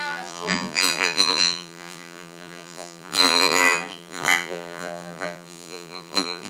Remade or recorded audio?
remade